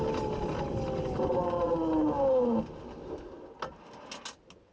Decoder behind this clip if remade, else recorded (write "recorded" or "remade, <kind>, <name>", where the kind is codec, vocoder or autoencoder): recorded